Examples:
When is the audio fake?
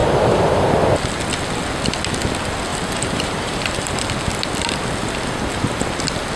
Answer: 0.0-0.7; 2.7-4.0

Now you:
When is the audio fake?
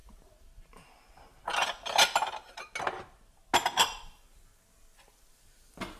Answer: none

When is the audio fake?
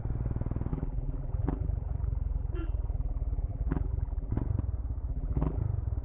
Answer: 0.7-4.3; 5.1-5.6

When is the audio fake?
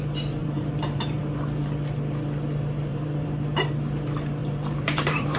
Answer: 0.4-1.2; 2.9-3.7; 4.4-5.4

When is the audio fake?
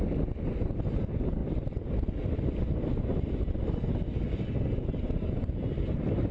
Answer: none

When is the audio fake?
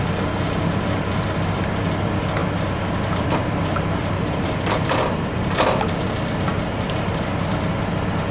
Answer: 2.4-5.5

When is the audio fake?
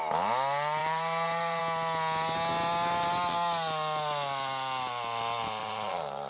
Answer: 0.8-1.6; 5.6-6.3